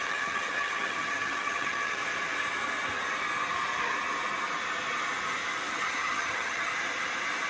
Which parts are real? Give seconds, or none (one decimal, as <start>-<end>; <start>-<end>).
2.0-5.7; 6.7-7.5

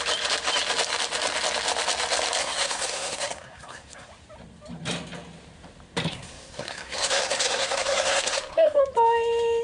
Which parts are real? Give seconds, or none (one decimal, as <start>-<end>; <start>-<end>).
0.0-2.4; 4.1-6.1; 8.8-9.6

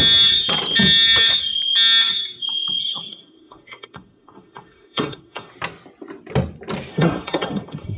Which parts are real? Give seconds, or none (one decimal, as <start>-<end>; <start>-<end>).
0.0-2.8; 5.5-6.9

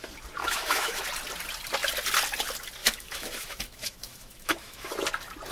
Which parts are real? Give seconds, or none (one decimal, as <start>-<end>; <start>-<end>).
0.0-0.4; 1.0-2.8; 4.9-5.5

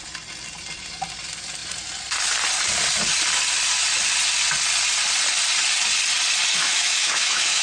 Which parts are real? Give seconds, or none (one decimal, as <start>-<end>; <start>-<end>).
0.0-6.5

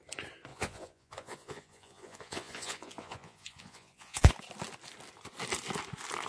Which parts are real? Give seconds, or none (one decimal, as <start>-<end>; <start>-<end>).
0.0-0.5; 4.3-6.3